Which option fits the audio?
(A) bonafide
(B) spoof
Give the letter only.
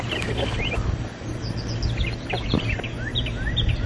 A